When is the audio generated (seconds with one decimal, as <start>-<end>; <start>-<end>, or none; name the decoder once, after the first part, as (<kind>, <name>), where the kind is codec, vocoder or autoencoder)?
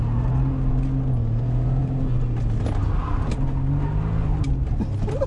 none